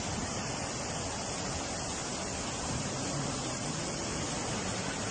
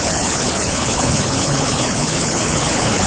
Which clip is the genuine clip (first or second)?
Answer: first